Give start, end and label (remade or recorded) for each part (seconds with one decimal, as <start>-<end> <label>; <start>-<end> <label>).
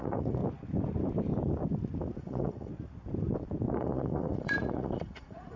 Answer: 0.0-0.4 remade; 0.4-2.2 recorded; 2.2-2.7 remade; 2.7-3.7 recorded; 3.7-5.6 remade